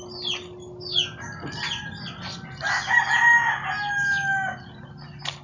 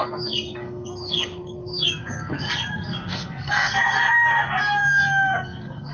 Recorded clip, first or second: first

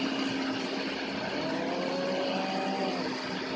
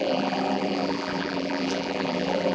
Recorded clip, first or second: first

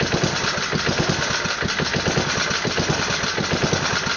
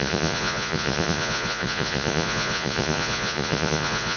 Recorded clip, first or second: first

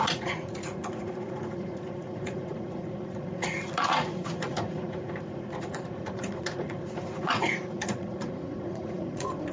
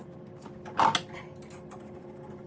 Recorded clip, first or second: second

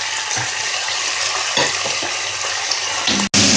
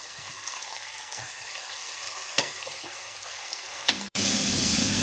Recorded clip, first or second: first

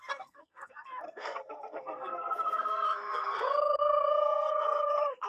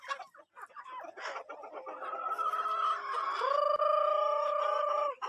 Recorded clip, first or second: second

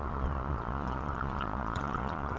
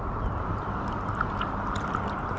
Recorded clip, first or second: second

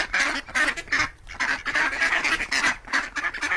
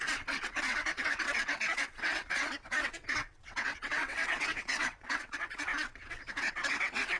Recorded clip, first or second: first